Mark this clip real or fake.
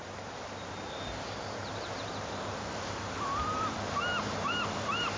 fake